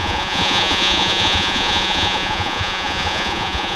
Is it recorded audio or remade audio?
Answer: remade